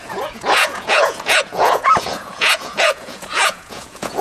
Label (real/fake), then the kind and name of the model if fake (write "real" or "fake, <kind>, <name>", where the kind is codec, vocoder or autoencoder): fake, vocoder, Vocos